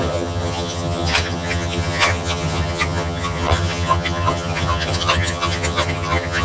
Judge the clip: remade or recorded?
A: remade